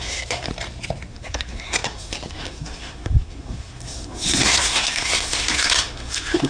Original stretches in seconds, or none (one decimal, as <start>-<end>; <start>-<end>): 0.5-1.1